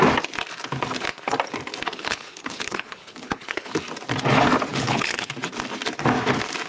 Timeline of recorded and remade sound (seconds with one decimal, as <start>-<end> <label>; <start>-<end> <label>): 0.0-1.9 recorded; 1.9-3.7 remade; 3.7-4.7 recorded; 4.7-5.3 remade; 5.3-6.7 recorded